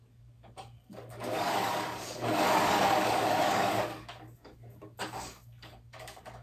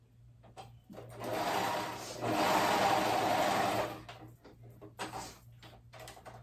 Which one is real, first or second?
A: second